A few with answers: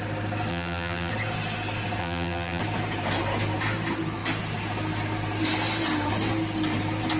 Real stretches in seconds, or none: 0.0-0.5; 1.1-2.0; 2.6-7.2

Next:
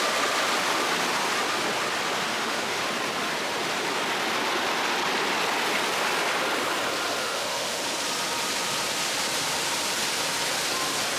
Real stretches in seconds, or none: 0.0-2.3; 2.8-7.2; 7.8-11.2